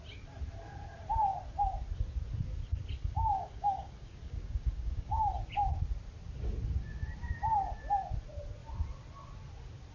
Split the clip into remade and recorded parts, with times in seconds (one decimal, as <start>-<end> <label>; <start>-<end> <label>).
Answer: 0.0-3.0 recorded; 3.0-5.3 remade; 5.3-9.9 recorded